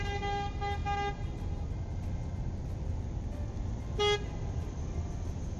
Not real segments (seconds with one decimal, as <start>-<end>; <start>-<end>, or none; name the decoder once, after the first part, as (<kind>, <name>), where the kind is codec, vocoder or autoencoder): none